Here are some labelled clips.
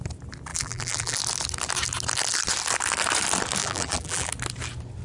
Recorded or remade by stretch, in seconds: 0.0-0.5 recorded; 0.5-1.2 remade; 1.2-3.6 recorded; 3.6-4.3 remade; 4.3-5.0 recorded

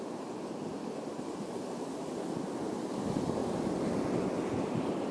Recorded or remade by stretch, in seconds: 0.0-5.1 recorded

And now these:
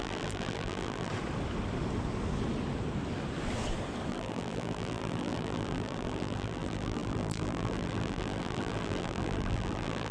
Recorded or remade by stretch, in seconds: 0.0-1.1 remade; 1.1-4.1 recorded; 4.1-10.1 remade